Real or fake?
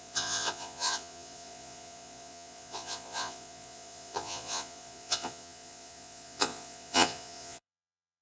fake